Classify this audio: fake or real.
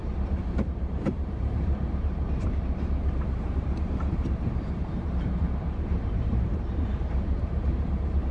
fake